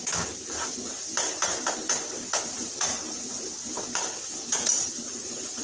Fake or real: real